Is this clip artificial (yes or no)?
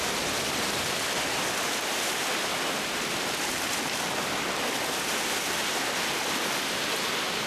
no